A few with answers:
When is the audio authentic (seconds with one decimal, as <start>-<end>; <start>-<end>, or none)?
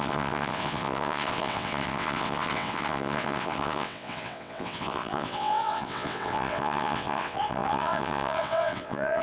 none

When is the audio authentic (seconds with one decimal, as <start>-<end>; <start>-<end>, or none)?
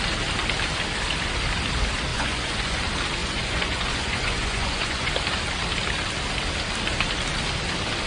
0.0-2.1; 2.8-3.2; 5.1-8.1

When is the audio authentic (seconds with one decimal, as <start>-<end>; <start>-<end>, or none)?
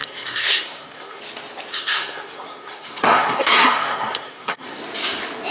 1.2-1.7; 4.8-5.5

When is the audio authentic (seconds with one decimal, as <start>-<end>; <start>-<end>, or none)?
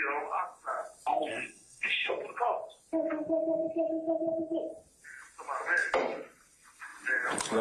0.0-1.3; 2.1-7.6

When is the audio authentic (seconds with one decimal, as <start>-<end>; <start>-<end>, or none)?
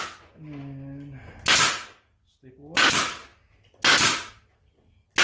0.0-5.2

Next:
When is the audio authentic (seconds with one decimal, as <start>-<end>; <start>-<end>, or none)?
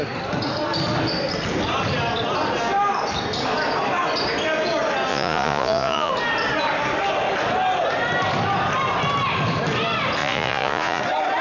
0.0-5.1; 6.1-10.2; 11.0-11.4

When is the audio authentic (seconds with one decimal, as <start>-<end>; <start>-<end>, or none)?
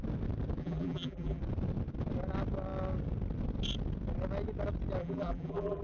0.0-0.6; 1.4-5.0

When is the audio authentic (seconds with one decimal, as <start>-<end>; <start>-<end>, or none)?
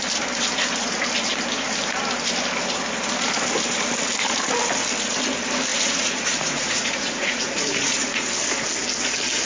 0.0-5.7; 8.3-9.5